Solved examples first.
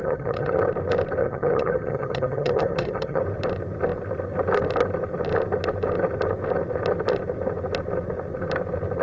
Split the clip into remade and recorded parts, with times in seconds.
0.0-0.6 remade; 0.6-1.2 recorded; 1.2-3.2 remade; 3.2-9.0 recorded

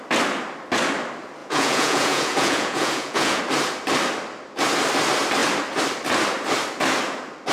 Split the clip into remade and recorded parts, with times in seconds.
0.0-1.4 recorded; 1.4-3.4 remade; 3.4-7.5 recorded

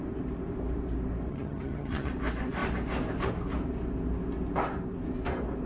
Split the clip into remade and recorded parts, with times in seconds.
0.0-1.3 recorded; 1.3-2.1 remade; 2.1-5.7 recorded

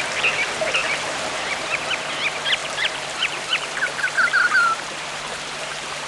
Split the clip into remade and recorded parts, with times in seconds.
0.0-0.8 recorded; 0.8-1.8 remade; 1.8-2.6 recorded; 2.6-6.1 remade

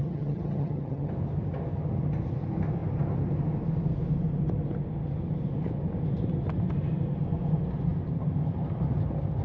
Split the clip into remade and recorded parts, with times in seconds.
0.0-1.1 remade; 1.1-9.4 recorded

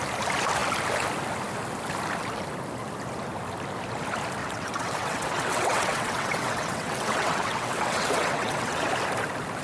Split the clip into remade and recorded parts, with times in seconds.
0.0-4.4 recorded; 4.4-8.9 remade; 8.9-9.6 recorded